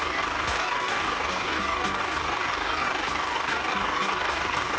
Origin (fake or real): fake